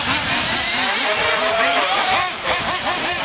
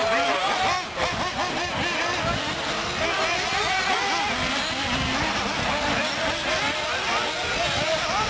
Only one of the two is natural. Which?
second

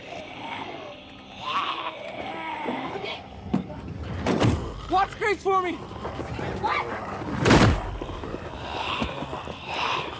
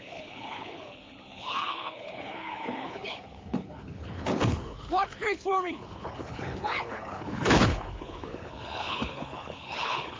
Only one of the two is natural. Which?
first